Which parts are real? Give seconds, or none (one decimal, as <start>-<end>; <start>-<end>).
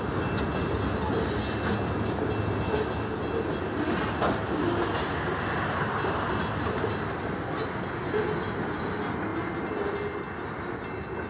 0.0-11.3